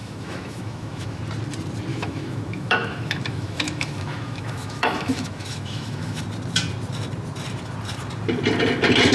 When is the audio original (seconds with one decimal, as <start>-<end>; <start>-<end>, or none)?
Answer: 1.2-1.9; 6.2-9.1